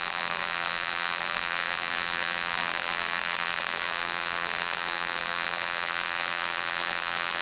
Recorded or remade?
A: remade